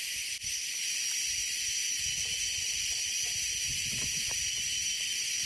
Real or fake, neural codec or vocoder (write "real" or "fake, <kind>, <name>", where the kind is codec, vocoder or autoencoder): real